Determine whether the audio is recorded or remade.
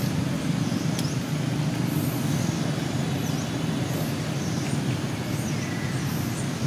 recorded